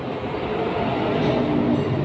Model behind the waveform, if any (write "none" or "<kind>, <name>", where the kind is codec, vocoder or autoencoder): none